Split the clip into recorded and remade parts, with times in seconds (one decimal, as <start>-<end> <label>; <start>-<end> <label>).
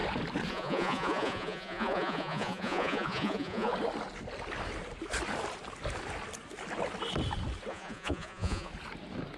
0.0-0.5 recorded; 0.5-3.7 remade; 3.7-7.7 recorded; 7.7-8.7 remade; 8.7-9.4 recorded